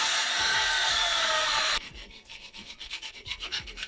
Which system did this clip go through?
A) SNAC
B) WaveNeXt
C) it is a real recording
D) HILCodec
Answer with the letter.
A